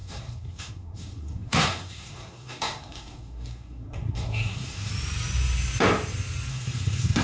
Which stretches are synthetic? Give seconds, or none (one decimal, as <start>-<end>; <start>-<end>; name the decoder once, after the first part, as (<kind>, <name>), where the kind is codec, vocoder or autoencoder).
0.0-4.9 (codec, SNAC); 6.5-7.2